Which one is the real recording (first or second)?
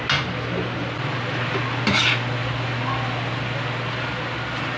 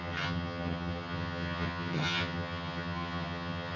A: first